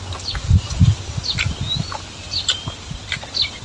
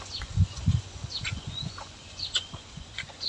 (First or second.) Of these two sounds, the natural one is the first